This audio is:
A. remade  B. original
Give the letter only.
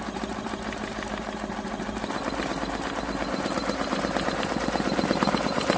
B